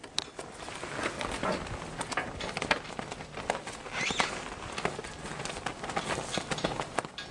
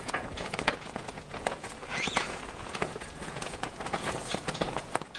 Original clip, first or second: first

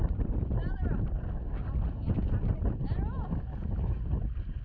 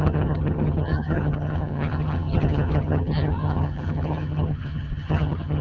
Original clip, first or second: first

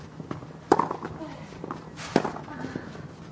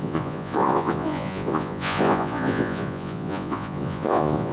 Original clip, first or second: first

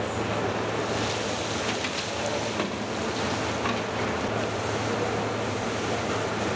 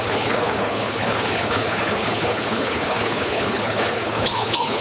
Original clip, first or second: first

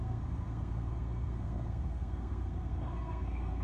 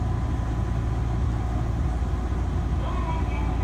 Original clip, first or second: second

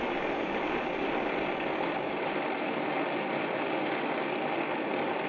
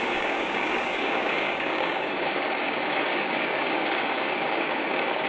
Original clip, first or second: first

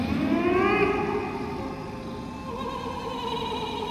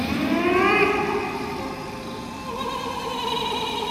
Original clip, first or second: first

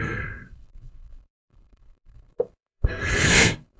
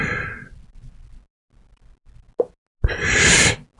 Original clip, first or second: second